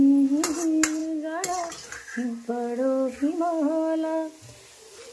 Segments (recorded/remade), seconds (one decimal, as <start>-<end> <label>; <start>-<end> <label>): 0.0-5.1 recorded